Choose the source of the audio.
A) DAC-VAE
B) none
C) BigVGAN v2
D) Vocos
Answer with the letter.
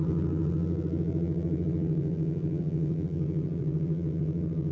C